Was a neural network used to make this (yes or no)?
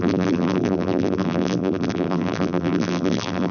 yes